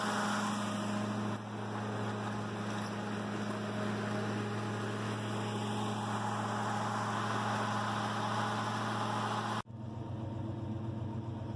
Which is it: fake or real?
real